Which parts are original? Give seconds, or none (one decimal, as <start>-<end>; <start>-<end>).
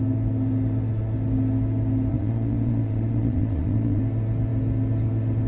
0.0-2.1; 4.0-5.5